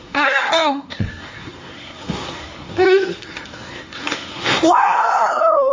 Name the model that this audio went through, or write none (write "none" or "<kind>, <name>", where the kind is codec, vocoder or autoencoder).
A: codec, SNAC